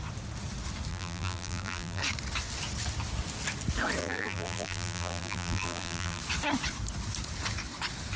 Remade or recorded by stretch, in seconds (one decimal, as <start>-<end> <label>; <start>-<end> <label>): 0.0-0.9 recorded; 0.9-2.0 remade; 2.0-4.0 recorded; 4.0-6.2 remade; 6.2-8.2 recorded